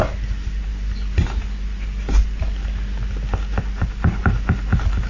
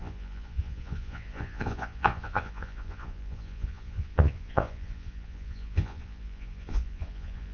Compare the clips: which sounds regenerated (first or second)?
second